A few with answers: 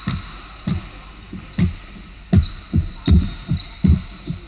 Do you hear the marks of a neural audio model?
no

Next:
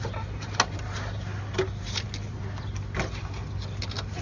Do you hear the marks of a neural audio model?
no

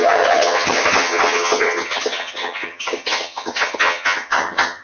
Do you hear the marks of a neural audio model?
yes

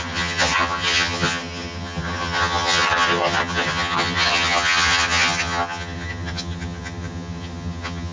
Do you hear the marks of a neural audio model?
yes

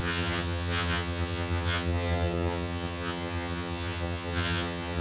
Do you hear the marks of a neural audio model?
yes